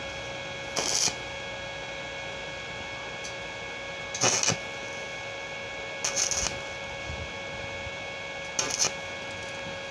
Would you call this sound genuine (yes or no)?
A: yes